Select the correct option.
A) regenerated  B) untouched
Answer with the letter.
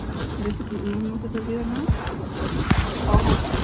B